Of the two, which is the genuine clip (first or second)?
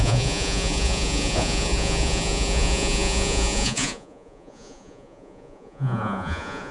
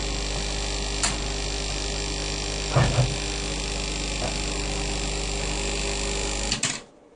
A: second